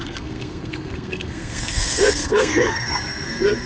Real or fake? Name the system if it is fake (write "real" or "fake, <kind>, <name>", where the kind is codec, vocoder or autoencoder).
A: fake, codec, SNAC